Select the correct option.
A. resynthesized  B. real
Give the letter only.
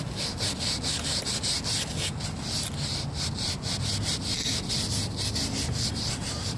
B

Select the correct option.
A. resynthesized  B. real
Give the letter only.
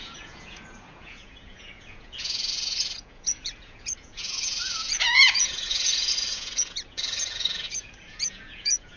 A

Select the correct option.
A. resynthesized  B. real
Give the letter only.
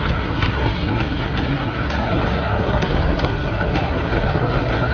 A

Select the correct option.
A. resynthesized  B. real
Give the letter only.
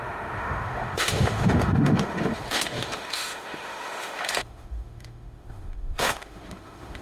A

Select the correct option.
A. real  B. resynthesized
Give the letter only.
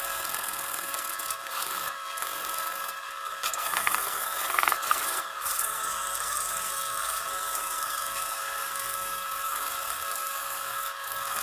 B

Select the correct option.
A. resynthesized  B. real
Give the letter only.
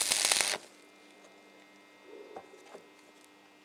B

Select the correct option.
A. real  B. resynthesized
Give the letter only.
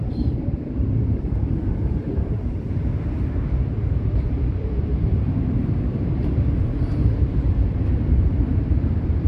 B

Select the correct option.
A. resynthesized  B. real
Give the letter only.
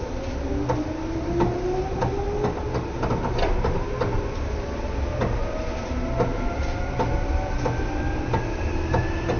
B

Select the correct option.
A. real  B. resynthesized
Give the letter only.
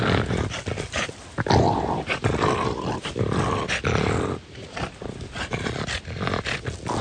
A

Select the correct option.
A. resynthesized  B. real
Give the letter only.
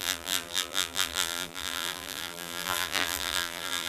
A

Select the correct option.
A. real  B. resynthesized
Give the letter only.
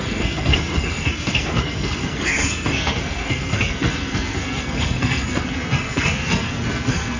B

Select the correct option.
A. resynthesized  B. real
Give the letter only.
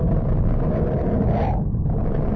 B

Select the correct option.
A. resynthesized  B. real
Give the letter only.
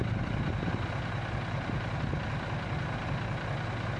B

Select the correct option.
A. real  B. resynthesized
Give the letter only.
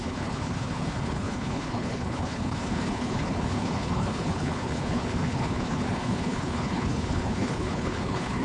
B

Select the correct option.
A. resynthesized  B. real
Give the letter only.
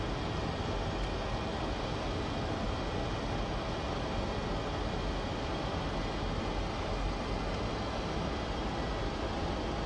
B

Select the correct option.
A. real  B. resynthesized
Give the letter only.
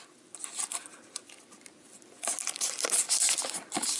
A